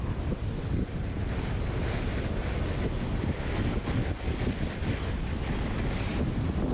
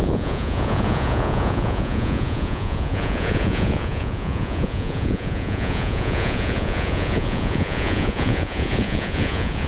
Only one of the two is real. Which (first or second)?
first